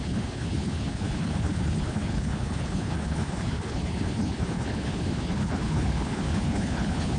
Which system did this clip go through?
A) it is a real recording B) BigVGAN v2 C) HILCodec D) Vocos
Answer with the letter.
C